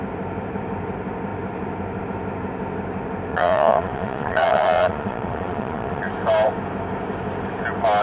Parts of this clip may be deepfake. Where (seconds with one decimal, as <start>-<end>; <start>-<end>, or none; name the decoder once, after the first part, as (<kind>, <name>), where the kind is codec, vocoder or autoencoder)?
3.3-6.0 (vocoder, Vocos)